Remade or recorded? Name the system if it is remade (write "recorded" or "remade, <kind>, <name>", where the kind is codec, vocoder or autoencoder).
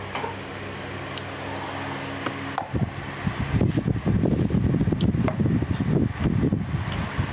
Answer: recorded